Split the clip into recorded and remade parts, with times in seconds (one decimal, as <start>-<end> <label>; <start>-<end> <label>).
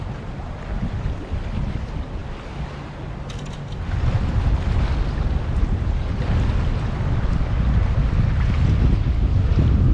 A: 0.0-9.9 recorded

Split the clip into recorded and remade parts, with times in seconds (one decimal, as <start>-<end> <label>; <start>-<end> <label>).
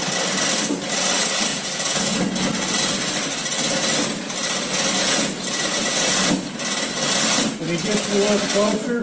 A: 0.0-1.5 recorded; 1.5-2.2 remade; 2.2-5.0 recorded; 5.0-6.3 remade; 6.3-9.0 recorded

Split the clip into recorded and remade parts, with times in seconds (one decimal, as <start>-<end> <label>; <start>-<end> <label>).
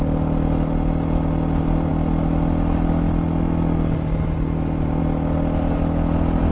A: 0.0-6.5 recorded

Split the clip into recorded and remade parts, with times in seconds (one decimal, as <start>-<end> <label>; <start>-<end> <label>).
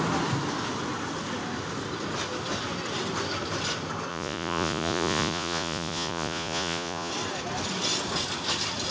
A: 0.0-4.1 recorded; 4.1-7.1 remade; 7.1-8.9 recorded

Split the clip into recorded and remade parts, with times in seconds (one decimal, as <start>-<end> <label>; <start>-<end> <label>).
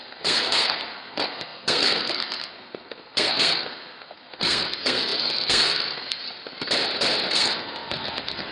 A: 0.0-6.2 remade; 6.2-7.3 recorded; 7.3-8.5 remade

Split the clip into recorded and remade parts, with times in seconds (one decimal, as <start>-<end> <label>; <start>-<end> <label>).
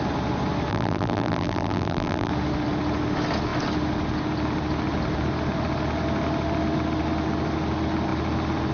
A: 0.0-0.7 recorded; 0.7-2.3 remade; 2.3-8.7 recorded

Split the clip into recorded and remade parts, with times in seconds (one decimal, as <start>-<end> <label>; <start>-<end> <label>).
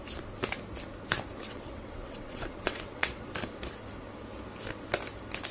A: 0.0-1.3 recorded; 1.3-3.3 remade; 3.3-5.5 recorded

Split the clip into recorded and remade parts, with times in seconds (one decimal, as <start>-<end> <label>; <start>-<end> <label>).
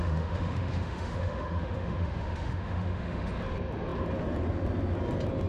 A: 0.0-3.3 remade; 3.3-5.5 recorded